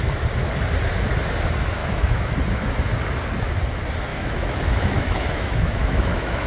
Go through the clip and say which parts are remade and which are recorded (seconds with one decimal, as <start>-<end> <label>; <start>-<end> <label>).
0.0-1.8 recorded; 1.8-2.3 remade; 2.3-4.1 recorded; 4.1-6.5 remade